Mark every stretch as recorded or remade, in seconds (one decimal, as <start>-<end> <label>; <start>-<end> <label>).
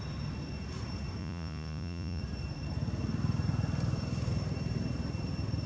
0.0-1.2 recorded; 1.2-2.2 remade; 2.2-5.7 recorded